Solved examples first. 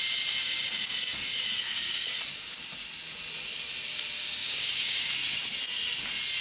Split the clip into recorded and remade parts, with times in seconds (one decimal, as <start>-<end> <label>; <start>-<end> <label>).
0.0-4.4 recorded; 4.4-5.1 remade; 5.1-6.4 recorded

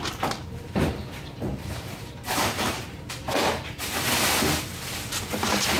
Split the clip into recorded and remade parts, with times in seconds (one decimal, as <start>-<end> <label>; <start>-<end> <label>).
0.0-1.5 recorded; 1.5-3.5 remade; 3.5-5.8 recorded

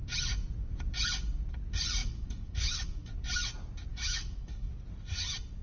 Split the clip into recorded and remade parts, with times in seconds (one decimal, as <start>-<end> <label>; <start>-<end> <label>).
0.0-2.0 recorded; 2.0-3.1 remade; 3.1-3.9 recorded; 3.9-4.7 remade; 4.7-5.6 recorded